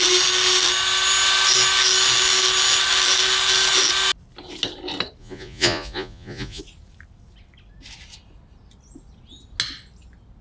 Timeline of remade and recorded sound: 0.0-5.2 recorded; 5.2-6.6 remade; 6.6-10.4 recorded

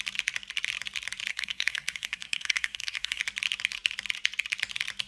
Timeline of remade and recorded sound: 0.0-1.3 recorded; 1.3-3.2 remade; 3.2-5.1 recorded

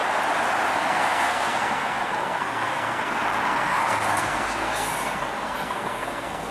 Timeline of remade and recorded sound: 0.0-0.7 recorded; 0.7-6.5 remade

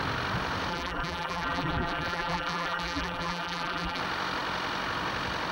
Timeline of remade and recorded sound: 0.0-0.7 recorded; 0.7-4.0 remade; 4.0-5.5 recorded

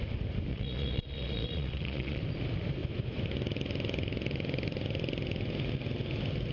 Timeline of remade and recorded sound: 0.0-0.5 recorded; 0.5-2.2 remade; 2.2-6.5 recorded

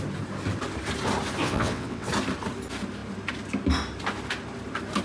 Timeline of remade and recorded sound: 0.0-1.4 recorded; 1.4-2.1 remade; 2.1-5.0 recorded